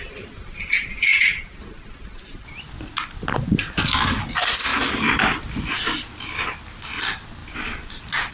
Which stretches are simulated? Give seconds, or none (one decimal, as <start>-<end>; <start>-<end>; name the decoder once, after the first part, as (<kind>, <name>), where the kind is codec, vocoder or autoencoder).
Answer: none